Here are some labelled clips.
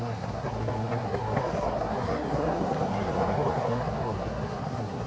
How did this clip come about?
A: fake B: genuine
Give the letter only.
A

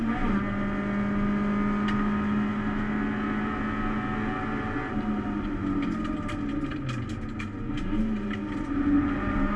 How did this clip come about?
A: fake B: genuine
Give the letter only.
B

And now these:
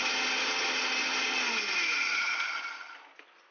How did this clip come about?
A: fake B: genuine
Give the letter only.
B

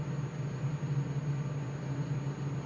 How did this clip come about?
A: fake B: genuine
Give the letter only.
B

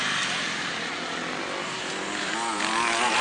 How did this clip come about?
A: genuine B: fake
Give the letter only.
A